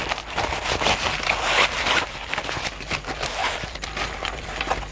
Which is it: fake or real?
real